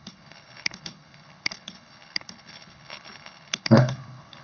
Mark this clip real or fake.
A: fake